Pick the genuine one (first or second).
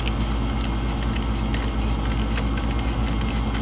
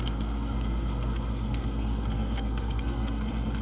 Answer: first